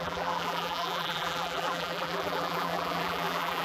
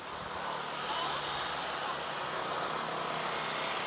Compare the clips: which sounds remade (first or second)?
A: first